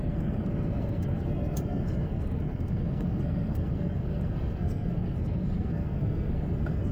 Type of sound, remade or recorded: remade